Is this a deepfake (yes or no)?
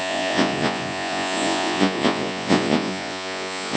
yes